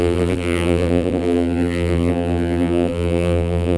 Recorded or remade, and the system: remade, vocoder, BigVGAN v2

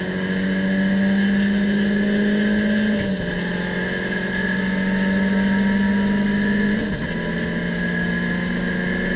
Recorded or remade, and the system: recorded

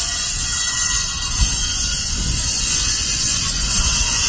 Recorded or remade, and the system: remade, vocoder, Vocos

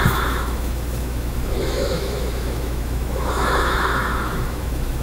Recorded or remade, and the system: remade, autoencoder, DAC-VAE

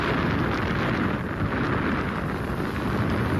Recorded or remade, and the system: recorded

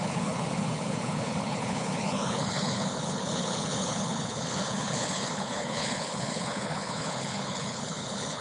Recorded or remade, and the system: remade, codec, HILCodec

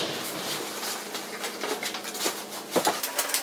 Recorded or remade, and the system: recorded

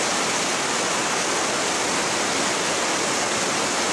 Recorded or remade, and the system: recorded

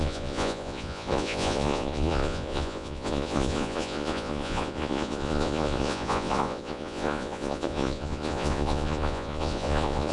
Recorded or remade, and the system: remade, vocoder, Vocos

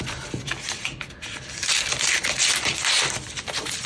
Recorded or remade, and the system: remade, vocoder, BigVGAN v2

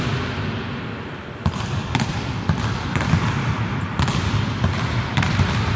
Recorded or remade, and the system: remade, vocoder, BigVGAN v2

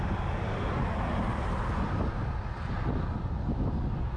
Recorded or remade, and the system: recorded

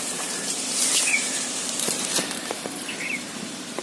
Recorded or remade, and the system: remade, vocoder, BigVGAN v2